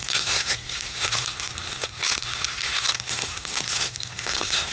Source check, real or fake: fake